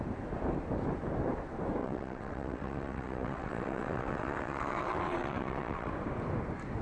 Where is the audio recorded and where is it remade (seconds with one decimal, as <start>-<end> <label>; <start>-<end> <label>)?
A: 0.0-1.8 recorded; 1.8-5.9 remade; 5.9-6.8 recorded

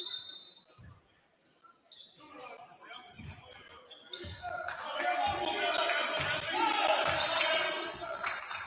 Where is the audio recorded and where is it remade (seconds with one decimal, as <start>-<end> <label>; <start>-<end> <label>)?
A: 0.0-7.2 recorded; 7.2-8.7 remade

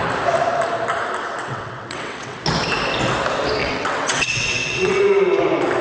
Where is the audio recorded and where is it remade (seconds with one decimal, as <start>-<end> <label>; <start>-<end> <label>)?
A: 0.0-1.2 recorded; 1.2-2.4 remade; 2.4-3.6 recorded; 3.6-5.0 remade; 5.0-5.8 recorded

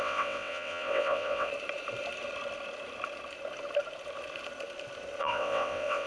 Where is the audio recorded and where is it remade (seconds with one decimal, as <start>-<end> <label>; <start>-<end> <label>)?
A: 0.0-1.5 remade; 1.5-5.2 recorded; 5.2-6.1 remade

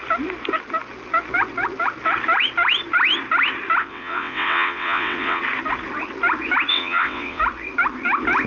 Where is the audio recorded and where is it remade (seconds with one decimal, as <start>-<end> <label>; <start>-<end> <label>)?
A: 0.0-3.8 recorded; 3.8-5.4 remade; 5.4-6.7 recorded; 6.7-7.4 remade; 7.4-8.5 recorded

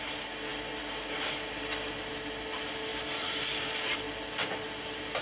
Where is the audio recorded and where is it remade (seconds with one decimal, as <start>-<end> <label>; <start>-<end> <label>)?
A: 0.0-5.2 recorded

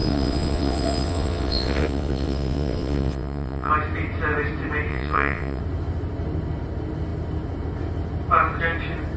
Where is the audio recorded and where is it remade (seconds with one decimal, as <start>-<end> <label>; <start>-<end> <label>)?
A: 0.0-3.7 remade; 3.7-4.9 recorded; 4.9-5.6 remade; 5.6-9.2 recorded

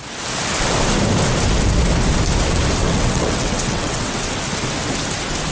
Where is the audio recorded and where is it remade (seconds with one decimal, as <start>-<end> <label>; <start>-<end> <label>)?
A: 0.0-2.8 recorded; 2.8-4.3 remade; 4.3-5.5 recorded